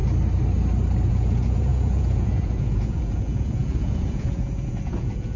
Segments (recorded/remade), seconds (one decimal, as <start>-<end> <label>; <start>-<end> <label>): 0.0-1.1 recorded; 1.1-5.4 remade